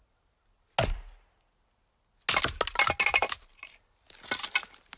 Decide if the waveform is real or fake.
real